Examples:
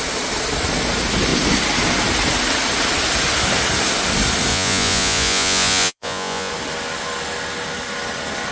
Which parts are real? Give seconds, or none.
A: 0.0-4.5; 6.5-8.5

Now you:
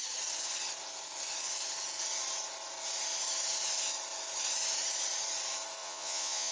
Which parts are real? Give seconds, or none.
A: 0.0-5.8

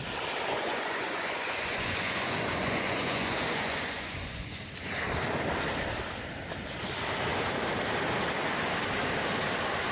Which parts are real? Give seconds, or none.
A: 0.0-0.5; 4.6-9.9

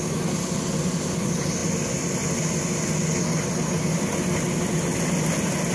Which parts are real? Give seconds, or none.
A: 0.0-5.7

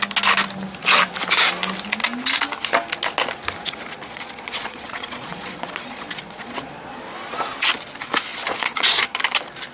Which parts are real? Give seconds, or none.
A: 0.0-3.6; 6.7-8.3; 9.2-9.7

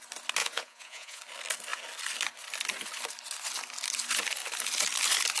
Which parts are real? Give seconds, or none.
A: 0.0-0.4; 1.2-5.4

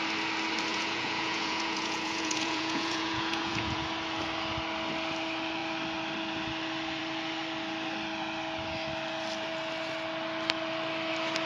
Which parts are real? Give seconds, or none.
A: 0.0-0.7; 3.8-11.5

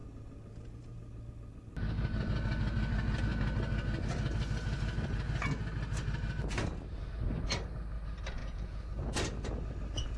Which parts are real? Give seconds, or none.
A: 0.0-8.4; 8.9-10.2